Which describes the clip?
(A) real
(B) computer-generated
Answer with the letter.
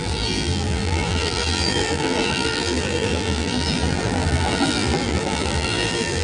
B